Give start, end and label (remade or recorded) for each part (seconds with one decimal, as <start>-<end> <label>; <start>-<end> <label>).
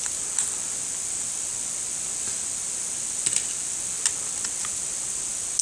0.0-5.6 recorded